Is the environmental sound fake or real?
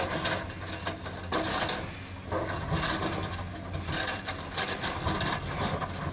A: real